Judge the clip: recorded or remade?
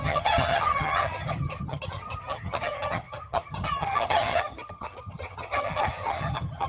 remade